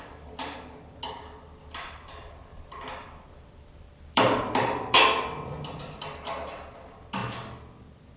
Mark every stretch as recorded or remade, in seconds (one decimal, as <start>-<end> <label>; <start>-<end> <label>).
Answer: 0.0-2.5 recorded; 2.5-5.0 remade; 5.0-8.2 recorded